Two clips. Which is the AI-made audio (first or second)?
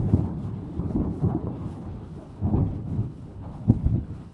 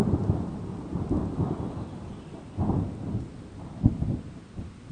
first